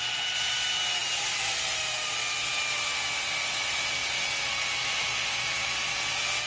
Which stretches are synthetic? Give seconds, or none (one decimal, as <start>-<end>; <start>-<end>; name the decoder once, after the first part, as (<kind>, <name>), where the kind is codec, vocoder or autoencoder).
none